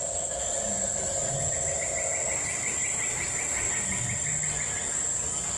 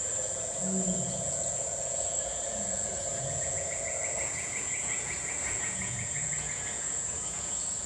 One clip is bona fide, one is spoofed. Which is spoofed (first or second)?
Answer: second